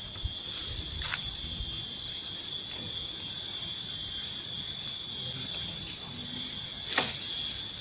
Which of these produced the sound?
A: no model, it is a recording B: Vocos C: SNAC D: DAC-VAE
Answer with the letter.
A